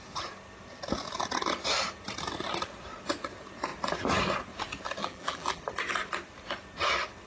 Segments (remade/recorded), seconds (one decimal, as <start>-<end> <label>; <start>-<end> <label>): 0.0-5.0 recorded; 5.0-5.6 remade; 5.6-7.3 recorded